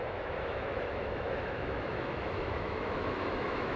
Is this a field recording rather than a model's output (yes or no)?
no